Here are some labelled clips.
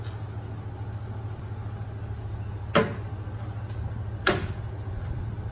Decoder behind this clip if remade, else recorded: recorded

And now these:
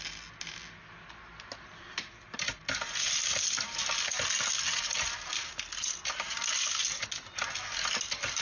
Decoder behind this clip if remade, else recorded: recorded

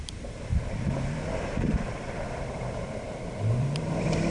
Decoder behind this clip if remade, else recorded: remade, vocoder, BigVGAN v2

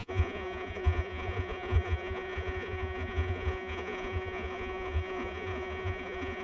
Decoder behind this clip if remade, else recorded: remade, vocoder, Vocos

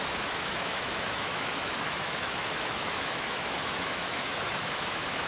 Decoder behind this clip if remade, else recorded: remade, autoencoder, DAC-VAE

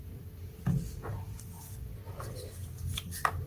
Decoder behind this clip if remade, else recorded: recorded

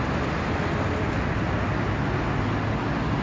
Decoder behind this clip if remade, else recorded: recorded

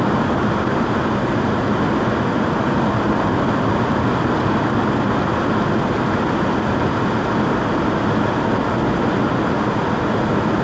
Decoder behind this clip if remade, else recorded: recorded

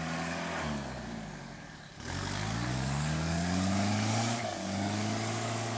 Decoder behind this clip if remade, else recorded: remade, codec, DAC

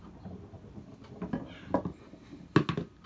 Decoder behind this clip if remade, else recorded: recorded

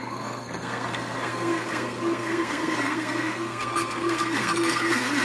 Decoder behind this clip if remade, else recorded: remade, codec, SNAC